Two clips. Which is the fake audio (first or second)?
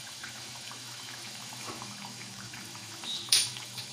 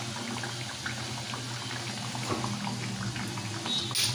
first